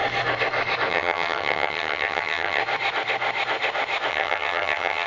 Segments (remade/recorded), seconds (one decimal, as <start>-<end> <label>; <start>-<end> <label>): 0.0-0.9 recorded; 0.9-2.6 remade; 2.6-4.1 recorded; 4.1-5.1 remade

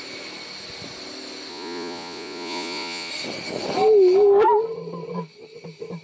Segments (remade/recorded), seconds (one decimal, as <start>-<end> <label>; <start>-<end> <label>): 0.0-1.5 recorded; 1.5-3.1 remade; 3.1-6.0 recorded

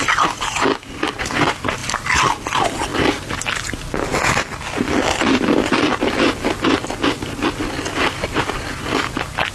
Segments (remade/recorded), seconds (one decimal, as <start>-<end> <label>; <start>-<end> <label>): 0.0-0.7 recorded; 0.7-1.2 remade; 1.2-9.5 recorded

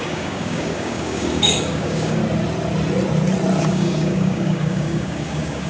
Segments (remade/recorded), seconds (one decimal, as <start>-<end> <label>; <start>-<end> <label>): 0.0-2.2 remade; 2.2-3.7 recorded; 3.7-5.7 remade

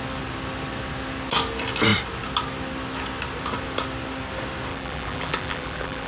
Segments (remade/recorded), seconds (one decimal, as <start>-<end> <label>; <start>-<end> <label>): 0.0-4.7 recorded; 4.7-6.1 remade

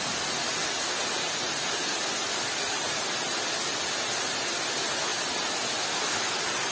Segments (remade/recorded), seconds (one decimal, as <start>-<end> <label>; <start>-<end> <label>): 0.0-6.7 recorded